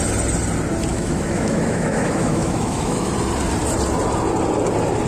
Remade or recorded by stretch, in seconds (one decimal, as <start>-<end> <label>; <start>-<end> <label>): 0.0-0.9 recorded; 0.9-3.1 remade; 3.1-5.1 recorded